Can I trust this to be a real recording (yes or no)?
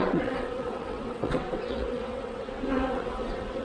no